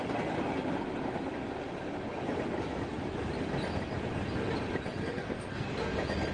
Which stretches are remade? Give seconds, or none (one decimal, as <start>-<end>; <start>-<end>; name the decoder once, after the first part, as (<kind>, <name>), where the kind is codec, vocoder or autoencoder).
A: 5.0-5.7 (codec, SNAC)